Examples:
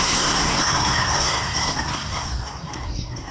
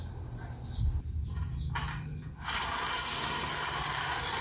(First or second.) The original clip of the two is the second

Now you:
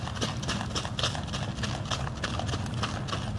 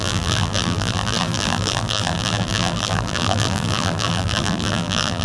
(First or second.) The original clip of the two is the first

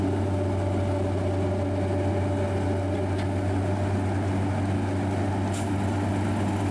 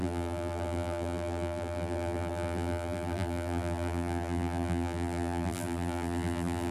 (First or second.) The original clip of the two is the first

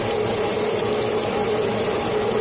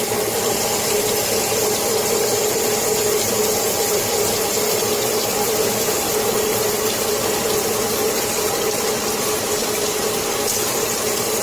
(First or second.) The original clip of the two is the first